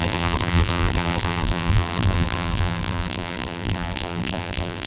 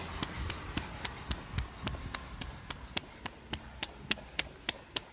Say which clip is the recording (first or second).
second